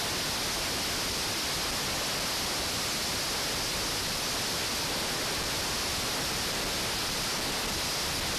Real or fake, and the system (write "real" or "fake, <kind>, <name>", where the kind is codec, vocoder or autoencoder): real